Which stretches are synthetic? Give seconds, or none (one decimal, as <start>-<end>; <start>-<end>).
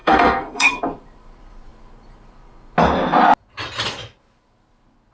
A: 0.0-0.8